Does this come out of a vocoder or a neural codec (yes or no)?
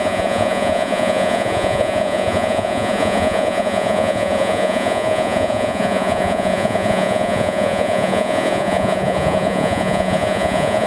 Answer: yes